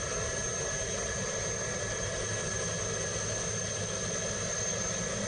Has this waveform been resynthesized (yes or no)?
no